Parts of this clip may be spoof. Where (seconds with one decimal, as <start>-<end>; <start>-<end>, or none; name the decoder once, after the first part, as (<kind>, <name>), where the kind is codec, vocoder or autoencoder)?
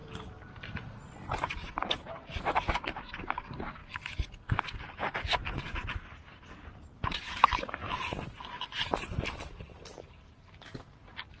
1.7-3.8 (vocoder, BigVGAN v2); 5.2-7.5; 9.9-11.4